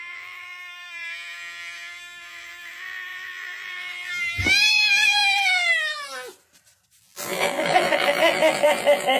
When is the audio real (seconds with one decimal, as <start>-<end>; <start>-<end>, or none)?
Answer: 5.2-7.0